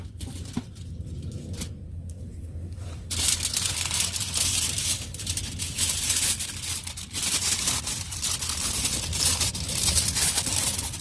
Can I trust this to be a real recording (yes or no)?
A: no